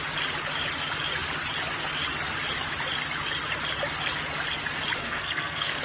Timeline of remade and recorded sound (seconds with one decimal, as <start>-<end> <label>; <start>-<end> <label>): 0.0-5.0 recorded; 5.0-5.8 remade

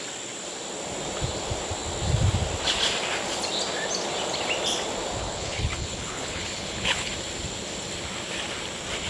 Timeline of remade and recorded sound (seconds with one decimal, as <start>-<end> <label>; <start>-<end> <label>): 0.0-5.2 recorded; 5.2-7.1 remade; 7.1-9.1 recorded

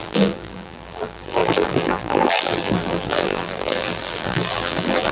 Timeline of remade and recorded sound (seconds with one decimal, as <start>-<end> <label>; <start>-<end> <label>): 0.0-5.1 remade

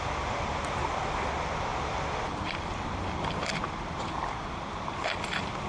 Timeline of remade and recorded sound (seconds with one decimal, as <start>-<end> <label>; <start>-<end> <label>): 0.0-1.7 recorded; 1.7-4.0 remade; 4.0-5.7 recorded

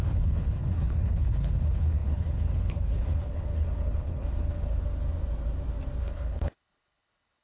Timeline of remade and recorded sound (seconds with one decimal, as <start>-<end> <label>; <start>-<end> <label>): 0.0-4.8 remade; 4.8-6.0 recorded; 6.0-7.4 remade

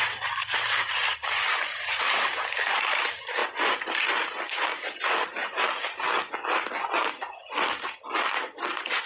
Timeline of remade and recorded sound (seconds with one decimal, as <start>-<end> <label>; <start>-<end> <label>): 0.0-9.1 recorded

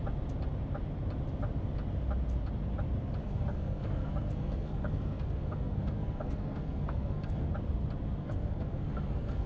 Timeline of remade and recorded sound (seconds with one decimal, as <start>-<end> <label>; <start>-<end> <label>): 0.0-3.2 recorded; 3.2-7.5 remade; 7.5-8.2 recorded; 8.2-9.5 remade